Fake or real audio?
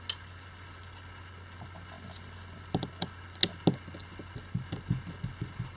real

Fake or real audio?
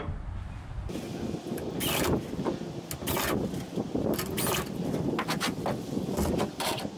real